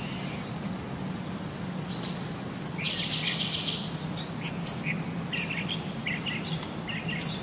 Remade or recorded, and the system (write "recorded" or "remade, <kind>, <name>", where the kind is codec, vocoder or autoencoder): recorded